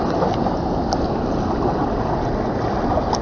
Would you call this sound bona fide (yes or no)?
yes